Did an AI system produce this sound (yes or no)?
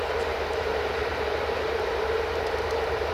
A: yes